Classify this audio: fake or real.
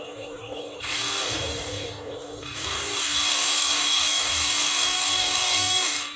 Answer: fake